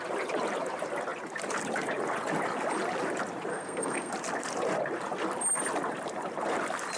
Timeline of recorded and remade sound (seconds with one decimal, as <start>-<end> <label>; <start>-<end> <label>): 0.0-3.5 recorded; 3.5-4.1 remade; 4.1-7.0 recorded